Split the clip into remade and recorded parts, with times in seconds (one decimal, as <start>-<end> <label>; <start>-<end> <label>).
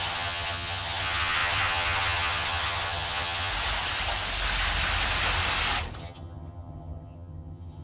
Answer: 0.0-3.5 remade; 3.5-6.0 recorded; 6.0-7.8 remade